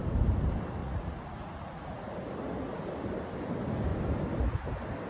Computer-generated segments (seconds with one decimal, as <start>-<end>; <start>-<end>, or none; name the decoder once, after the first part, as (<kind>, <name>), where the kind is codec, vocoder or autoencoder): 0.8-1.9 (vocoder, Vocos)